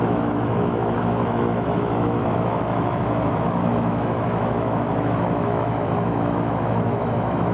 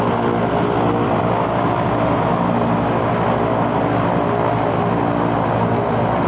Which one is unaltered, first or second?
second